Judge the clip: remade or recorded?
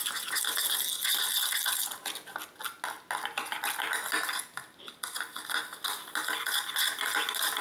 recorded